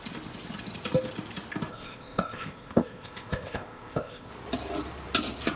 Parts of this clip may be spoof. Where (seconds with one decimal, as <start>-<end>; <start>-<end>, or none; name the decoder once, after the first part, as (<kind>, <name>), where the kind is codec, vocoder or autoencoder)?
1.7-4.3 (codec, ZipCodec)